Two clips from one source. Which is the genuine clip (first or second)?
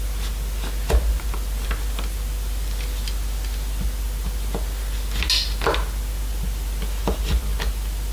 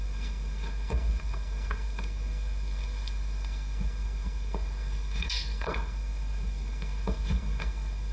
first